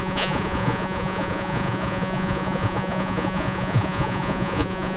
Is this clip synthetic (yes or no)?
yes